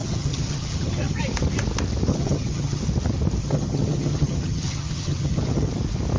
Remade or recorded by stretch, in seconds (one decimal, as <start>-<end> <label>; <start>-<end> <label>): 0.0-1.2 remade; 1.2-2.1 recorded; 2.1-2.8 remade; 2.8-3.4 recorded; 3.4-5.7 remade; 5.7-6.2 recorded